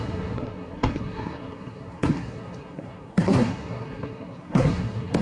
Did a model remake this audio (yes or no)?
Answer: yes